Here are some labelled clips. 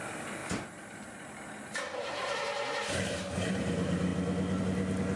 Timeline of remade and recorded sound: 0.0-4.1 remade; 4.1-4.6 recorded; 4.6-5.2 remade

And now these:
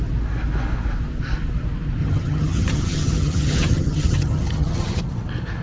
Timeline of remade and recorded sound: 0.0-2.0 recorded; 2.0-5.0 remade; 5.0-5.6 recorded

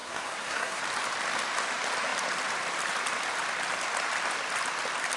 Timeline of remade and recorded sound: 0.0-0.8 remade; 0.8-5.2 recorded

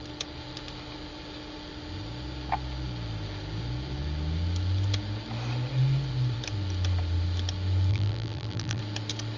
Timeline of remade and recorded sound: 0.0-7.9 recorded; 7.9-8.8 remade; 8.8-9.4 recorded

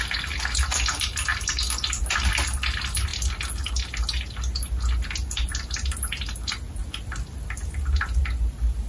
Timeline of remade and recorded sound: 0.0-8.9 recorded